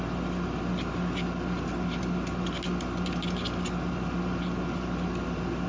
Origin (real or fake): real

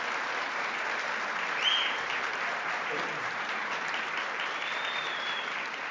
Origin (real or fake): fake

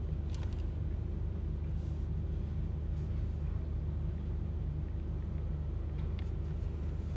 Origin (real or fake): real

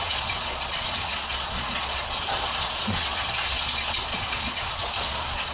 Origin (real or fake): fake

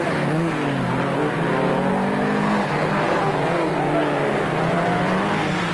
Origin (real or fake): real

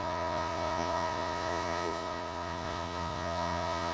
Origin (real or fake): fake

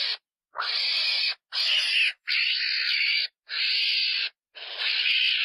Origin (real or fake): real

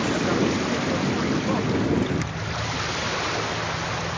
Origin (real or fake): real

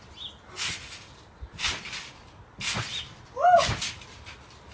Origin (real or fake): real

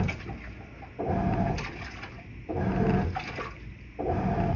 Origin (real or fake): real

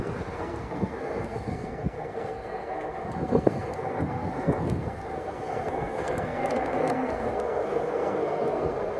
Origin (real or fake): fake